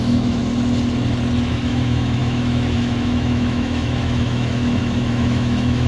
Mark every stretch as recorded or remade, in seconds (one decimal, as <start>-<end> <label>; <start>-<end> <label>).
0.0-0.4 remade; 0.4-1.5 recorded; 1.5-5.9 remade

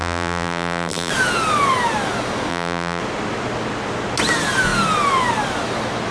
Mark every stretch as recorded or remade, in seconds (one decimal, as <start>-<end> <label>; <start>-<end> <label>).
0.0-1.1 remade; 1.1-2.5 recorded; 2.5-3.0 remade; 3.0-6.1 recorded

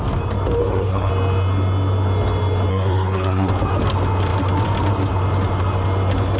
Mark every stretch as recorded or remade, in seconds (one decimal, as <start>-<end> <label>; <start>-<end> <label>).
0.0-0.6 recorded; 0.6-1.1 remade; 1.1-2.7 recorded; 2.7-3.5 remade; 3.5-6.4 recorded